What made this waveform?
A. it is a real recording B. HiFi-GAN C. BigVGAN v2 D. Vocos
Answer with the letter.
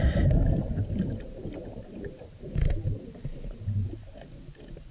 C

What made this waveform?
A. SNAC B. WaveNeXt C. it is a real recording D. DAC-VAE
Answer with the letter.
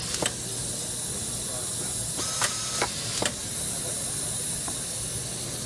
C